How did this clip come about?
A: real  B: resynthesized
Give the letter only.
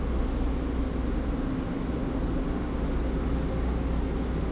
A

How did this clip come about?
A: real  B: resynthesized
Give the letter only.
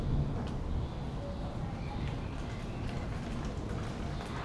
A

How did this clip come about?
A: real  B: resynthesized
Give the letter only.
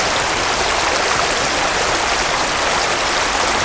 A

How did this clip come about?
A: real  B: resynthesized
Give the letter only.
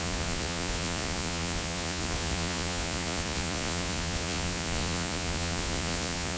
B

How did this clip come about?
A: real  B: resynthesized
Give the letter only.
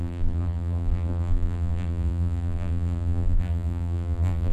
B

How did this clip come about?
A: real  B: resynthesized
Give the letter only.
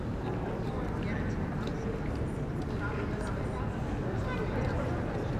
A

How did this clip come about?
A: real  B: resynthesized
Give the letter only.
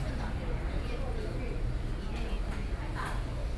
A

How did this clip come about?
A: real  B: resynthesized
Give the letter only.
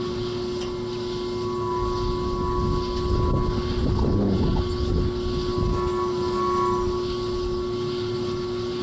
A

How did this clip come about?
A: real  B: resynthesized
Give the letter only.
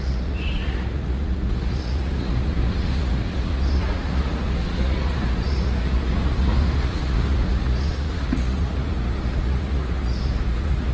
B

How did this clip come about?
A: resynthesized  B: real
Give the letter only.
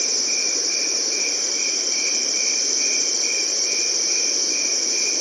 A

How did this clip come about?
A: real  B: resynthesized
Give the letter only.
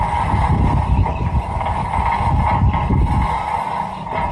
A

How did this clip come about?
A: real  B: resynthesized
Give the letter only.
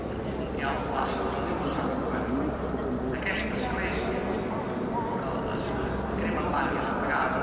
A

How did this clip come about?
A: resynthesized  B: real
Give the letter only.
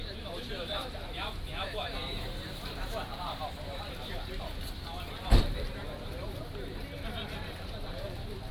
A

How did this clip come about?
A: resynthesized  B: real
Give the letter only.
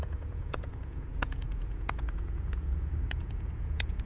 A